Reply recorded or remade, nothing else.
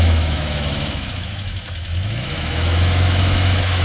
remade